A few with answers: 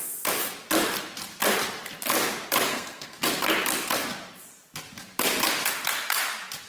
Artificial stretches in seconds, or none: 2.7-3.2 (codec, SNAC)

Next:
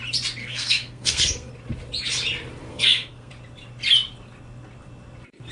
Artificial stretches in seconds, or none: 0.4-1.5 (codec, SNAC); 2.7-3.3